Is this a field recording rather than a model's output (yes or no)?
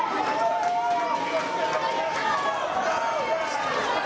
yes